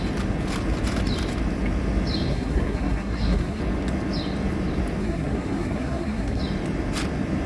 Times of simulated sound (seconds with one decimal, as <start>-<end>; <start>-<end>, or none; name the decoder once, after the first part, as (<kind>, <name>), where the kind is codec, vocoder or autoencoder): 2.3-3.6 (codec, SNAC); 5.0-6.4